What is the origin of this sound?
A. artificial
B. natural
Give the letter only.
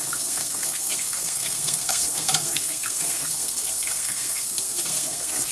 A